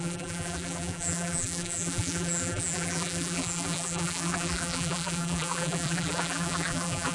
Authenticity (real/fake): fake